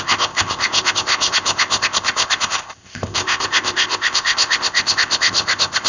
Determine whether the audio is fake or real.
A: fake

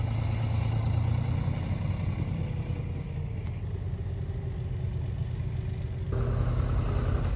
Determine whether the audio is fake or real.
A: real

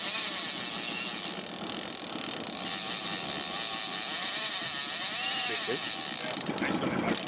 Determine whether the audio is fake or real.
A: real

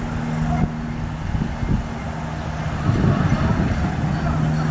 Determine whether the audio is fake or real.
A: real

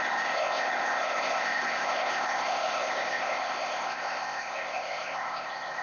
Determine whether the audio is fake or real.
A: fake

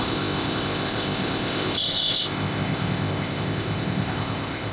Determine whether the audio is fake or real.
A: fake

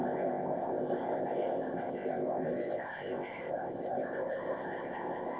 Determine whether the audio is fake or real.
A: fake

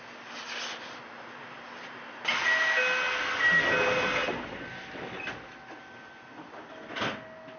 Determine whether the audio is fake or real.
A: real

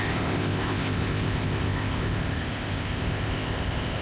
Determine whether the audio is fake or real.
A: fake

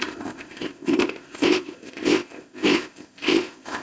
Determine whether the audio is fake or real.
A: fake